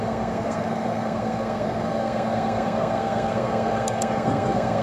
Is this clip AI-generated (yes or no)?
yes